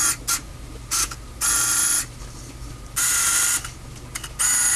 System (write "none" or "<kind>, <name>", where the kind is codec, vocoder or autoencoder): none